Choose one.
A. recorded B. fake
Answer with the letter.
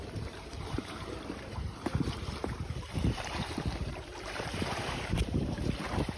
B